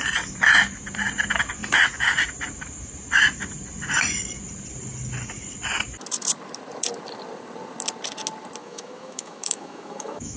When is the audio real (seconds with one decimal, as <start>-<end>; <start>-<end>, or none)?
0.0-8.6